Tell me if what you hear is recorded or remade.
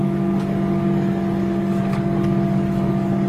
remade